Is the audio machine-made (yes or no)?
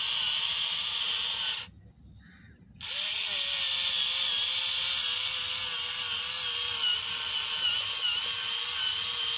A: no